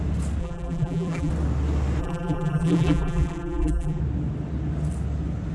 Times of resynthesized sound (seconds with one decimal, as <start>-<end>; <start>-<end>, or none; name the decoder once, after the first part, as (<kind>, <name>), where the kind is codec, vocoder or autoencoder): 0.4-1.3 (vocoder, BigVGAN v2); 2.0-4.0